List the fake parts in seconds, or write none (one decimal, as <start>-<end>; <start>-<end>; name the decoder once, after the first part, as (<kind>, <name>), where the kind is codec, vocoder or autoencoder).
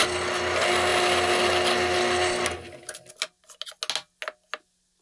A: none